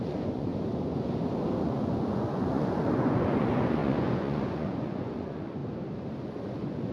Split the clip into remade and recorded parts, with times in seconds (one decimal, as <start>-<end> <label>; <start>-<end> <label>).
0.0-0.5 remade; 0.5-1.6 recorded; 1.6-5.6 remade; 5.6-6.2 recorded; 6.2-6.9 remade